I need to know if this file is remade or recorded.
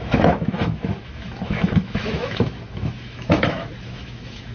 remade